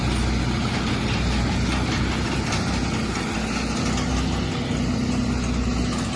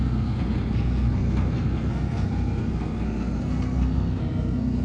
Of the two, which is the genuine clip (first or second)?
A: first